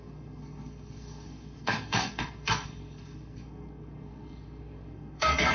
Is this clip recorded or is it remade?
remade